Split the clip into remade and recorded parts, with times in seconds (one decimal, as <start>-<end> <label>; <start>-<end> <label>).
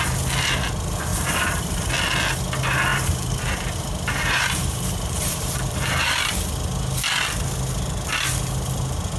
0.0-1.1 recorded; 1.1-1.9 remade; 1.9-2.9 recorded; 2.9-6.3 remade; 6.3-9.2 recorded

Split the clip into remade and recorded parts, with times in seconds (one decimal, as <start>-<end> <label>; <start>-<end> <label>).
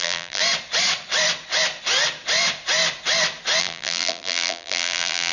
0.0-0.4 remade; 0.4-3.6 recorded; 3.6-5.3 remade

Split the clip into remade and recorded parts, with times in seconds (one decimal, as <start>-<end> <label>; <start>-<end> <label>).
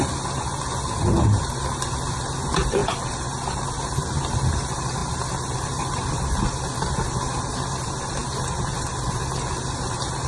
0.0-10.3 recorded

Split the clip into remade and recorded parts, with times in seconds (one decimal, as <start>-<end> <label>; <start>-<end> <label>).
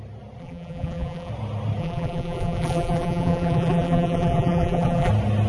0.0-0.4 recorded; 0.4-1.3 remade; 1.3-1.8 recorded; 1.8-5.1 remade; 5.1-5.5 recorded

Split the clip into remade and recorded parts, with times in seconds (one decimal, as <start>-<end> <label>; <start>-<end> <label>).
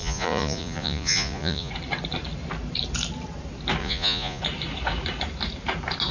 0.0-1.7 remade; 1.7-3.8 recorded; 3.8-4.4 remade; 4.4-6.1 recorded